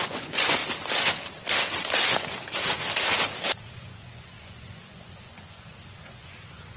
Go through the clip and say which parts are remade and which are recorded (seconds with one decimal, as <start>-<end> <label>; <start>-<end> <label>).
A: 0.0-0.6 remade; 0.6-3.7 recorded; 3.7-6.8 remade